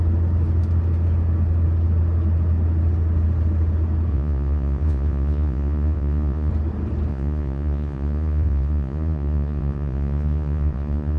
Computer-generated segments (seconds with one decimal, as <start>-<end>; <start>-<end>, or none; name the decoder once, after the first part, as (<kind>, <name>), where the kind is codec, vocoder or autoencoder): 4.1-6.5 (vocoder, Vocos); 7.1-11.2